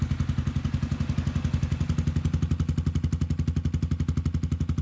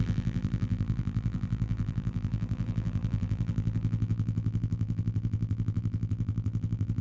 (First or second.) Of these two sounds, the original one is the first